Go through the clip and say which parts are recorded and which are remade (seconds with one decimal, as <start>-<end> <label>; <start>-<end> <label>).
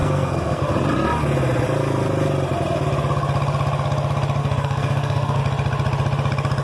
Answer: 0.0-0.7 remade; 0.7-4.4 recorded; 4.4-5.4 remade; 5.4-6.6 recorded